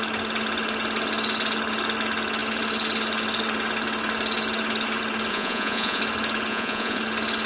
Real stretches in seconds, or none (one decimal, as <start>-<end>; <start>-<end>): 0.0-5.3; 6.0-6.5; 7.0-7.5